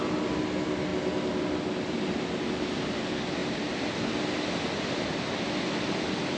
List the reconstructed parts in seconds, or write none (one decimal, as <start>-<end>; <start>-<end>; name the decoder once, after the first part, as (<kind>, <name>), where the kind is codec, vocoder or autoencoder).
none